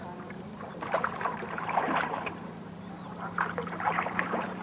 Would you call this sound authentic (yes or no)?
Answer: no